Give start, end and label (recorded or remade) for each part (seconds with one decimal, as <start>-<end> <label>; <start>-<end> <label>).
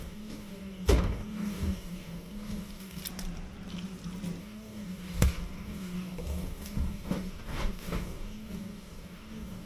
0.0-3.0 remade; 3.0-4.4 recorded; 4.4-9.7 remade